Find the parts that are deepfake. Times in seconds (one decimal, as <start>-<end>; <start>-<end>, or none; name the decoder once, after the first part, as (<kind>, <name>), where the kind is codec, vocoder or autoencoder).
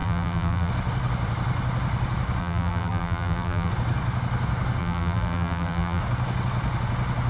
0.0-0.7 (vocoder, BigVGAN v2); 2.4-3.7; 4.8-6.0